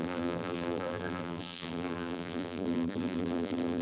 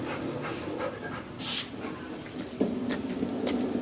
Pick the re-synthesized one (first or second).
first